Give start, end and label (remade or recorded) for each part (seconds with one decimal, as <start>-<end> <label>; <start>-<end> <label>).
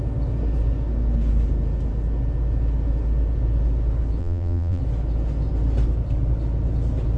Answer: 0.0-4.2 recorded; 4.2-4.8 remade; 4.8-7.2 recorded